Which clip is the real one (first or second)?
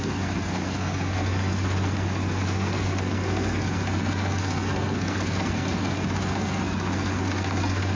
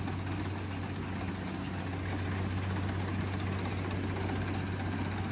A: second